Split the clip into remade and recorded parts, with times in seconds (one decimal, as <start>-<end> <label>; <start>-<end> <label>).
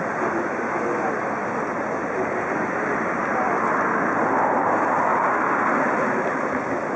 0.0-5.1 recorded; 5.1-6.6 remade; 6.6-7.0 recorded